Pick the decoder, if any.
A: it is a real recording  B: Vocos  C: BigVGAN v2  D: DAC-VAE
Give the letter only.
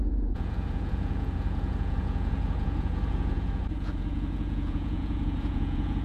B